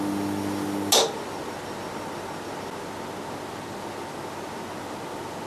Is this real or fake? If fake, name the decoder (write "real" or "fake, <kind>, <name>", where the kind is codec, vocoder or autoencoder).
real